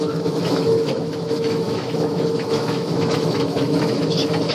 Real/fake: fake